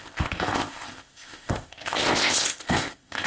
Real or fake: fake